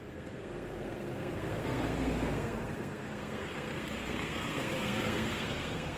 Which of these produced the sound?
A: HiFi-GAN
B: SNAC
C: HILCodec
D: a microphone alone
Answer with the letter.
B